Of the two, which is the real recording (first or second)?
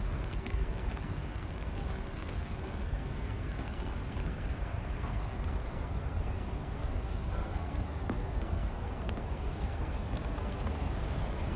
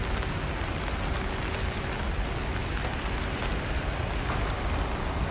second